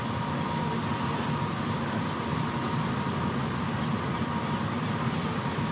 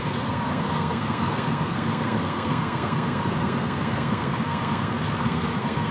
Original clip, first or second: first